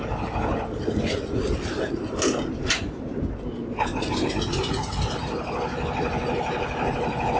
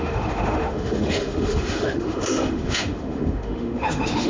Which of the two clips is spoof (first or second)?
second